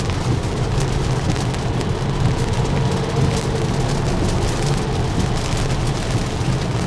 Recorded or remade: recorded